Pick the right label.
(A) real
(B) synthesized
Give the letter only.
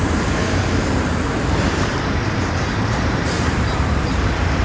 B